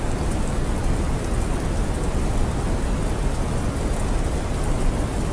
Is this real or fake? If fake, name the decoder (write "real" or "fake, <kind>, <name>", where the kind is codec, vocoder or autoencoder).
real